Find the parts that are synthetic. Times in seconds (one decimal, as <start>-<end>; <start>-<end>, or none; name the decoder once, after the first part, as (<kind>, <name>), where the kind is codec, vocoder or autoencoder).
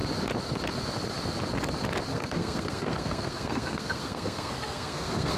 2.1-5.4 (codec, SNAC)